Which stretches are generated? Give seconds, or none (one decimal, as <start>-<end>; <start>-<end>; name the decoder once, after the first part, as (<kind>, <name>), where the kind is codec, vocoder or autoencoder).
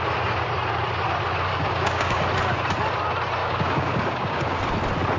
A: 1.5-2.2 (codec, DAC); 3.4-4.6